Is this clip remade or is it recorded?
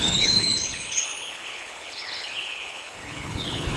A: remade